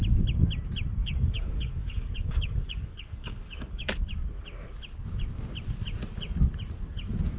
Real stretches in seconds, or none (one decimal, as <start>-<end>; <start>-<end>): 0.0-1.0; 4.0-7.4